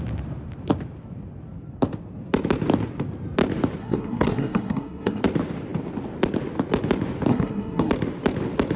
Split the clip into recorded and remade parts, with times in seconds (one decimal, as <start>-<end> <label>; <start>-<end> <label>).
0.0-3.8 recorded; 3.8-5.2 remade; 5.2-7.3 recorded; 7.3-7.9 remade; 7.9-8.8 recorded